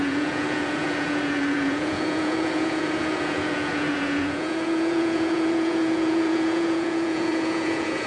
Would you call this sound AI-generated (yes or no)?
yes